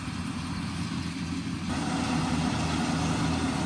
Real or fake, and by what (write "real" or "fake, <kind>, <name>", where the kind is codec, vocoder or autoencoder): real